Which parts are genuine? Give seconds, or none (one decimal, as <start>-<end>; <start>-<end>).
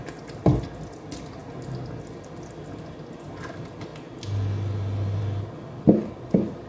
0.0-6.7